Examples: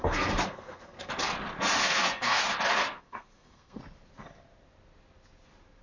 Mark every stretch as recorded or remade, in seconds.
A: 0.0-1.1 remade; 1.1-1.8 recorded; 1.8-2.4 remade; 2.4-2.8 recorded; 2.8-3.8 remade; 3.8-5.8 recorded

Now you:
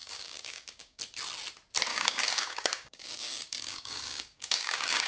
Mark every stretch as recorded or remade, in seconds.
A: 0.0-1.0 remade; 1.0-1.9 recorded; 1.9-5.1 remade

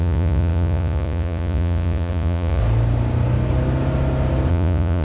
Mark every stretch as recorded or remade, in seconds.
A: 0.0-2.6 remade; 2.6-4.5 recorded; 4.5-5.0 remade

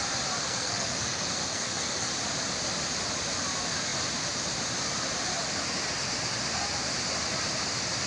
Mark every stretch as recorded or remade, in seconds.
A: 0.0-0.4 recorded; 0.4-2.1 remade; 2.1-8.1 recorded

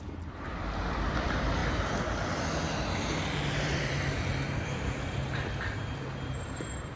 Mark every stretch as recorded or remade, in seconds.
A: 0.0-7.0 remade

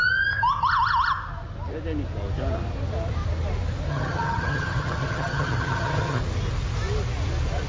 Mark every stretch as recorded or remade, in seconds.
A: 0.0-3.9 recorded; 3.9-6.2 remade; 6.2-7.7 recorded

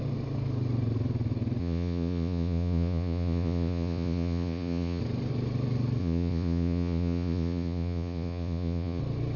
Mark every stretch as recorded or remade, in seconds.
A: 0.0-1.6 recorded; 1.6-5.0 remade; 5.0-6.0 recorded; 6.0-9.0 remade; 9.0-9.4 recorded